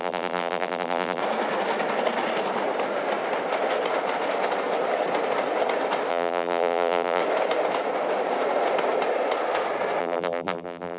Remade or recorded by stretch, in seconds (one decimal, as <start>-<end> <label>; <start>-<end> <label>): 0.0-1.2 remade; 1.2-6.1 recorded; 6.1-7.2 remade; 7.2-10.0 recorded; 10.0-11.0 remade